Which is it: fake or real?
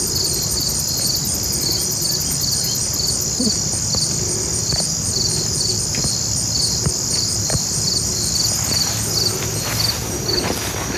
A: real